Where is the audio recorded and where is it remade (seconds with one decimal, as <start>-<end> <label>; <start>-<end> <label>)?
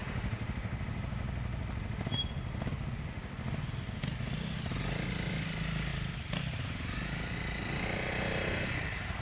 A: 0.0-9.2 recorded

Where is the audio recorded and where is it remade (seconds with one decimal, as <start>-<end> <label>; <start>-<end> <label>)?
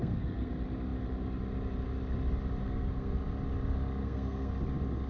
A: 0.0-0.5 remade; 0.5-2.6 recorded; 2.6-3.2 remade; 3.2-4.0 recorded; 4.0-4.5 remade; 4.5-5.1 recorded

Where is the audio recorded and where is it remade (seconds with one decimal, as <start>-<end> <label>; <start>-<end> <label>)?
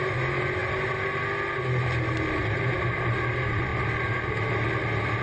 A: 0.0-5.2 recorded